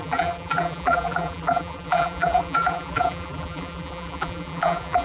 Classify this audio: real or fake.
fake